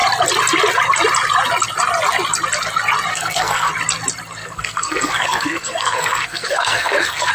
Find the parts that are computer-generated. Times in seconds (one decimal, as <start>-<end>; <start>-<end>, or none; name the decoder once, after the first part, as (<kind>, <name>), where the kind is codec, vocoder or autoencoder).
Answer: 3.1-3.7 (codec, SNAC); 4.4-7.3